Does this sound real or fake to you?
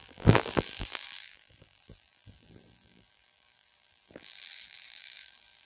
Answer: fake